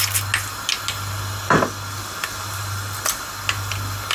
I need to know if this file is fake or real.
real